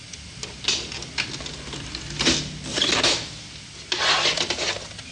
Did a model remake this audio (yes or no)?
no